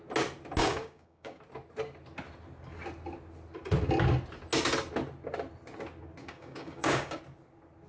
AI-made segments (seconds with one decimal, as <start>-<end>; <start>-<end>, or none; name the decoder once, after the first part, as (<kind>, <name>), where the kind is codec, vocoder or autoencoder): 0.6-1.4 (codec, DAC); 6.2-7.2